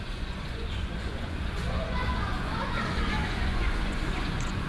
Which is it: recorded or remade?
remade